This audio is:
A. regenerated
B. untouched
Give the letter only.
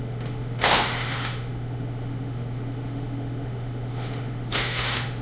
A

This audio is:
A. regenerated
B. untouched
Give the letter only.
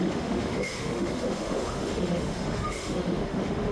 A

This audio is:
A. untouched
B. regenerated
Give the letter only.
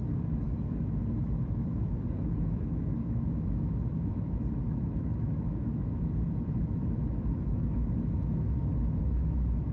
B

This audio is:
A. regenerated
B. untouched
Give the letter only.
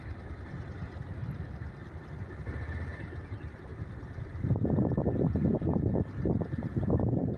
B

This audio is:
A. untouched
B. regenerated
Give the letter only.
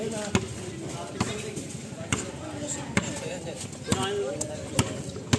A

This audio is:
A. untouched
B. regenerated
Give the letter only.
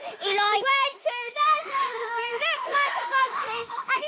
B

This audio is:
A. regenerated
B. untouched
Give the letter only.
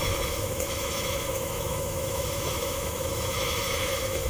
A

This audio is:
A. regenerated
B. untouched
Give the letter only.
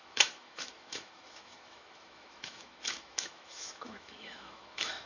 A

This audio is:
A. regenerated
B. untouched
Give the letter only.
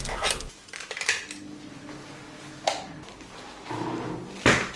B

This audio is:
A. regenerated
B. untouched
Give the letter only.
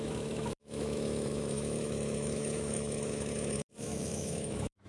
A